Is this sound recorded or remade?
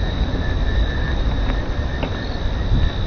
recorded